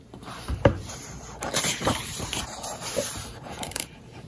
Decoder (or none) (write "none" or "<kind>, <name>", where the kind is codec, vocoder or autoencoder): vocoder, BigVGAN v2